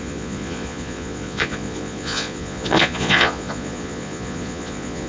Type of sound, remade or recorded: remade